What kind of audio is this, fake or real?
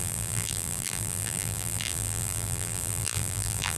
fake